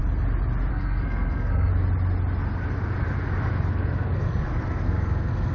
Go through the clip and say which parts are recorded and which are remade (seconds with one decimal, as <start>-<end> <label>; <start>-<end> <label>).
0.0-0.7 recorded; 0.7-1.7 remade; 1.7-3.7 recorded; 3.7-5.5 remade

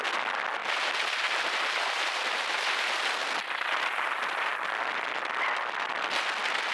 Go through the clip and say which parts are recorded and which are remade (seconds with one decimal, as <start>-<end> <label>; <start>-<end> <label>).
0.0-6.7 recorded

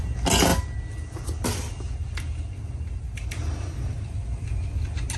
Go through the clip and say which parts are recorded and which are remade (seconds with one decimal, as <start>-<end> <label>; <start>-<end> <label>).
0.0-5.2 recorded

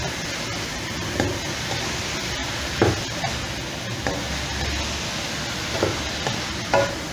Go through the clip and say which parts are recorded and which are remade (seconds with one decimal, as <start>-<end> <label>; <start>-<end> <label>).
0.0-0.7 recorded; 0.7-1.3 remade; 1.3-2.4 recorded; 2.4-2.9 remade; 2.9-7.1 recorded

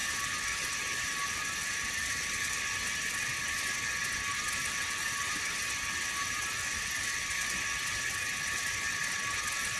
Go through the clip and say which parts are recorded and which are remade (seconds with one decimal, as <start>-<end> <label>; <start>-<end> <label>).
0.0-9.8 recorded

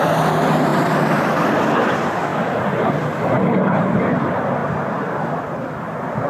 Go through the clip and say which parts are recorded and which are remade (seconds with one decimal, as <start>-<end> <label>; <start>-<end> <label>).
0.0-6.3 recorded

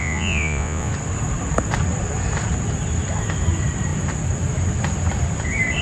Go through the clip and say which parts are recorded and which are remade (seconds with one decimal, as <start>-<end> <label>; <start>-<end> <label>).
0.0-0.9 remade; 0.9-5.8 recorded